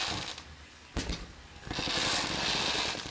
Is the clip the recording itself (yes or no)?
yes